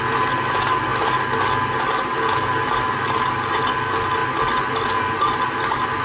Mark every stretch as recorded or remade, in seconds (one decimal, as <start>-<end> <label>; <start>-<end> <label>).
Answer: 0.0-6.0 recorded